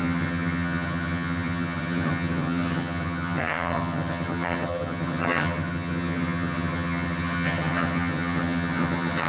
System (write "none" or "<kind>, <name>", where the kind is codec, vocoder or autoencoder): vocoder, HiFi-GAN